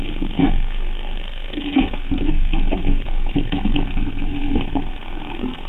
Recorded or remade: remade